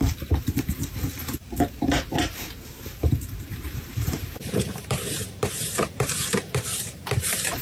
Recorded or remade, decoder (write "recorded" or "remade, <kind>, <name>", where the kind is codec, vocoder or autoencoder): remade, vocoder, BigVGAN v2